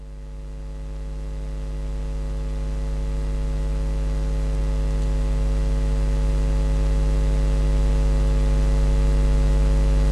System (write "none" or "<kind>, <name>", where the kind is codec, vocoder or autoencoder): none